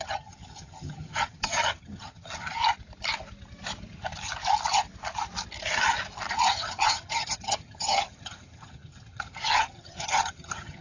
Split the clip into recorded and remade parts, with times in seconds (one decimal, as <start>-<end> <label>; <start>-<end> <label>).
0.0-2.6 remade; 2.6-6.5 recorded; 6.5-10.8 remade